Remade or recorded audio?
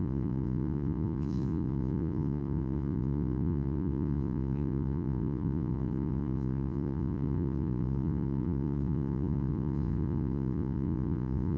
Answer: remade